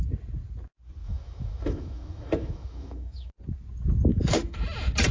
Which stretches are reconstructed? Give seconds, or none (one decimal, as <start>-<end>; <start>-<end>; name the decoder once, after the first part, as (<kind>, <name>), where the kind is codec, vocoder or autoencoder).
1.0-3.3 (autoencoder, DAC-VAE); 4.1-4.6

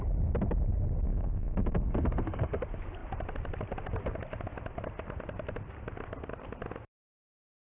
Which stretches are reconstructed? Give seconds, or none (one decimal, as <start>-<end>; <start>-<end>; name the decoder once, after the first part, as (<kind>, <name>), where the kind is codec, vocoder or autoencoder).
1.1-2.6 (codec, SNAC)

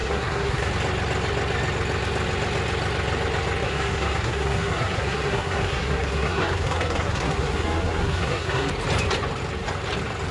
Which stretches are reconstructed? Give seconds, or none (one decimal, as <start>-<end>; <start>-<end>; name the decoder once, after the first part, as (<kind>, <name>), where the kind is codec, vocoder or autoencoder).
0.0-0.7 (codec, SNAC); 3.6-8.7

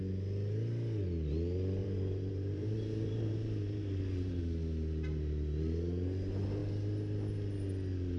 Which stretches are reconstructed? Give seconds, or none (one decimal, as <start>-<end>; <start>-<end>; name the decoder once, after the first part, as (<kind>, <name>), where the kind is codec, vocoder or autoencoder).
1.8-4.4 (vocoder, BigVGAN v2)